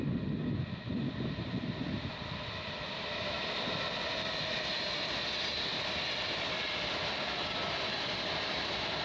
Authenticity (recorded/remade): recorded